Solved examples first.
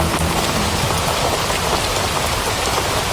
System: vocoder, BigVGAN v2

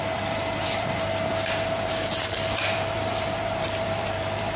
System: vocoder, BigVGAN v2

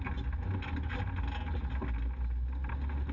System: none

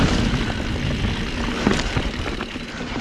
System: vocoder, BigVGAN v2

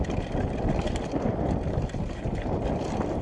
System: none